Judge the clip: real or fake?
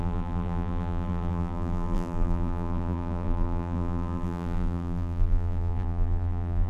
fake